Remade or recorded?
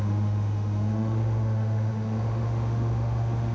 remade